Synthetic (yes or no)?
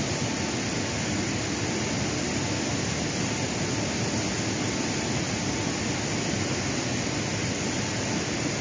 no